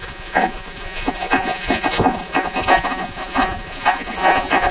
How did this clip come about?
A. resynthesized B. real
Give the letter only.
A